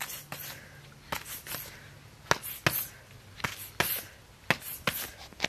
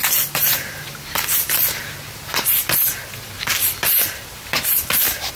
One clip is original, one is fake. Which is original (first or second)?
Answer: first